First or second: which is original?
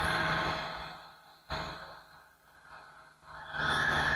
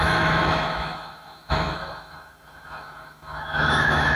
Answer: first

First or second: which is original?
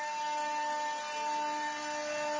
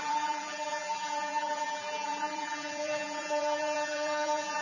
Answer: first